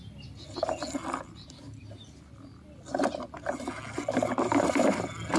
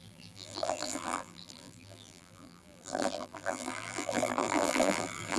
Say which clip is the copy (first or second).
second